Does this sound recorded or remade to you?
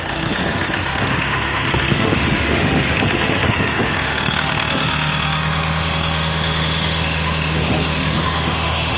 remade